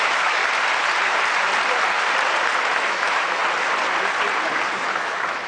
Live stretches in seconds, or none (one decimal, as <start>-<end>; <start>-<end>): 0.4-2.8; 3.4-4.8